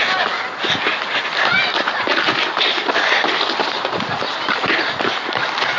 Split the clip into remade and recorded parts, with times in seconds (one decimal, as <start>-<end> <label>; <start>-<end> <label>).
0.0-5.8 recorded